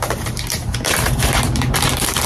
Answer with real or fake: fake